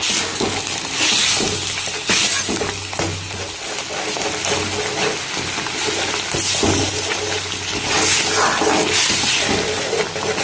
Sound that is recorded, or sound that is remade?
recorded